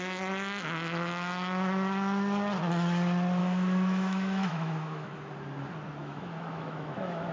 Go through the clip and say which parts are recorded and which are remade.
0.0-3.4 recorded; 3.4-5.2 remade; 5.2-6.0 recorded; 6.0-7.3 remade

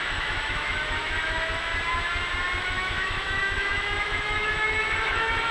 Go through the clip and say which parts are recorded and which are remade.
0.0-1.7 remade; 1.7-2.6 recorded; 2.6-5.5 remade

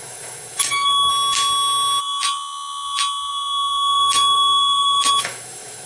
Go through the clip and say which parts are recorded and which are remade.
0.0-1.1 remade; 1.1-2.0 recorded; 2.0-5.9 remade